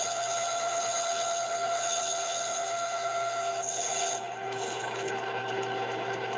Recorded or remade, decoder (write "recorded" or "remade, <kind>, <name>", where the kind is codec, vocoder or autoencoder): remade, codec, HILCodec